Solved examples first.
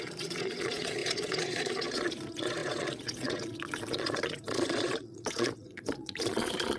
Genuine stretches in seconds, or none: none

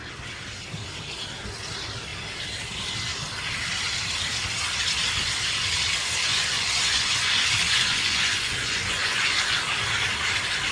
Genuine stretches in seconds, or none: 0.0-6.3; 9.6-10.7

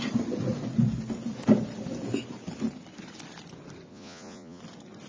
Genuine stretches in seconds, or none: 0.0-3.9; 4.6-5.1

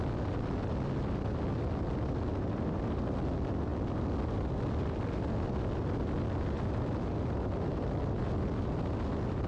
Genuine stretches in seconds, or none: 0.0-9.5

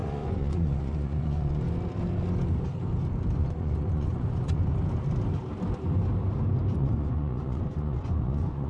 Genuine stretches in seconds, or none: 1.6-3.4; 4.6-6.8